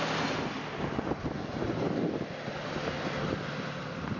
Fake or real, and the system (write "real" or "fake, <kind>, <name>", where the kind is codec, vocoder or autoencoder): real